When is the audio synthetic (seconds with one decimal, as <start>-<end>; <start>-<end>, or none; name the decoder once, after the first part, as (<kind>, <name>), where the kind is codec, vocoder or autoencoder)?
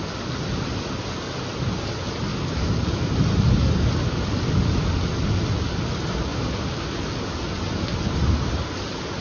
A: none